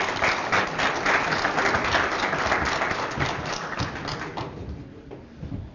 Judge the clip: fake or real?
real